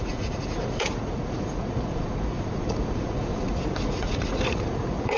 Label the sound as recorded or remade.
remade